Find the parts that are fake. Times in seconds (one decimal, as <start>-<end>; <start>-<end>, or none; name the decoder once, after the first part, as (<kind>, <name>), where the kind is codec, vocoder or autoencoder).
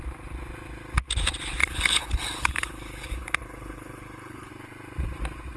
1.6-4.5 (codec, HILCodec)